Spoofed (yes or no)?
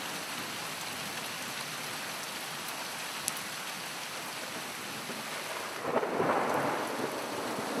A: no